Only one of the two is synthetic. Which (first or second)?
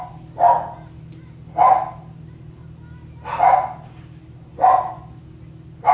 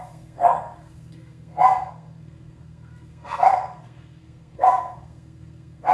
second